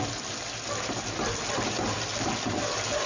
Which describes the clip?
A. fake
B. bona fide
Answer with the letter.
B